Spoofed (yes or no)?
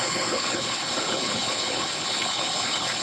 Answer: yes